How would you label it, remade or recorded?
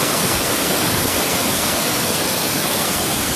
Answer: remade